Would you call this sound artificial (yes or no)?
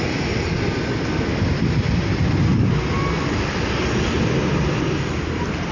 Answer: no